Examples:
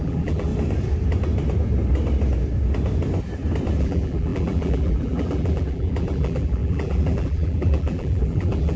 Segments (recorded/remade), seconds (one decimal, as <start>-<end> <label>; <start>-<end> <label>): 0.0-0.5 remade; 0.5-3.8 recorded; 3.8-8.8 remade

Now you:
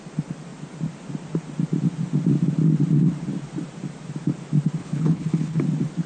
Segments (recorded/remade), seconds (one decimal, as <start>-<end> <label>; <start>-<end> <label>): 0.0-4.8 recorded; 4.8-5.6 remade; 5.6-6.1 recorded

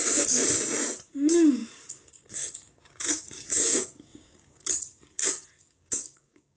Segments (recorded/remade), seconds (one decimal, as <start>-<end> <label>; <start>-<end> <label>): 0.0-0.4 remade; 0.4-1.0 recorded; 1.0-6.6 remade